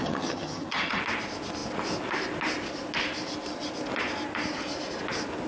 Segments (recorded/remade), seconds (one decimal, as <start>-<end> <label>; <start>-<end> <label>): 0.0-1.0 remade; 1.0-5.5 recorded